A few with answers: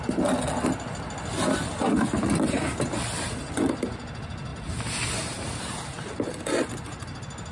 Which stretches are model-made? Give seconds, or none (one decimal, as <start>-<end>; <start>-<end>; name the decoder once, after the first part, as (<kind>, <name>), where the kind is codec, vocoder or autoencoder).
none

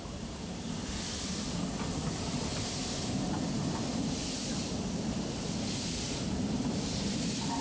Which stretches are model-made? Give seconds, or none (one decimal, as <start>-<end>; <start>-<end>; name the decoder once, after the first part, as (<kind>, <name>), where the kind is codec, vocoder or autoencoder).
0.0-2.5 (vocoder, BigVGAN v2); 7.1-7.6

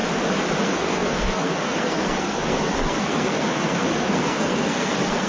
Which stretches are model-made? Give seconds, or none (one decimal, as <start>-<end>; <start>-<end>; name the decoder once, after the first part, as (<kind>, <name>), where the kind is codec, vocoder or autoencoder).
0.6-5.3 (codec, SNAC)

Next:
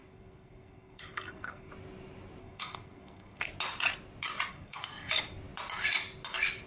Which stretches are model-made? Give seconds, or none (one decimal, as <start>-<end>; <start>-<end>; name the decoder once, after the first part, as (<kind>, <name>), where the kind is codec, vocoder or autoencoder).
0.0-1.7 (codec, SNAC); 2.4-3.5; 4.5-5.1

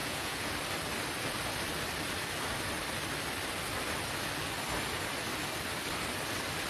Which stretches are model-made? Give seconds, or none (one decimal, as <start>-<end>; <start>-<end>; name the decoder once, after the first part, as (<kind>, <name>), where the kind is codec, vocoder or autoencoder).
0.0-0.5 (vocoder, Vocos)

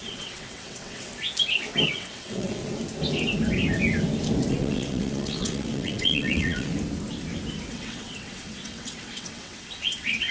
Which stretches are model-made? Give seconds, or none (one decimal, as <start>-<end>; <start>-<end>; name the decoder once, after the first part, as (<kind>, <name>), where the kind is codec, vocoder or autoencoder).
0.0-1.1 (vocoder, WaveNeXt); 1.9-2.6; 4.5-6.7; 7.7-10.3

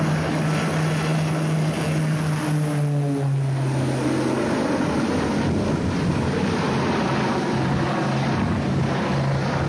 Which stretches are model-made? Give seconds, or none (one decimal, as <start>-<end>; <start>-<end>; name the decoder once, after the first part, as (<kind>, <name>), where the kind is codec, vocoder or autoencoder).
none

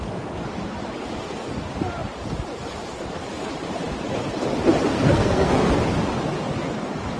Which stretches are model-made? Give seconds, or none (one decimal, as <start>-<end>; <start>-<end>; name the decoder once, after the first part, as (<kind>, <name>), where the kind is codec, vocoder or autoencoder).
4.9-5.7 (codec, SNAC)